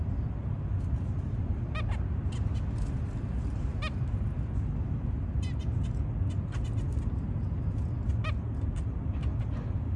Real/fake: real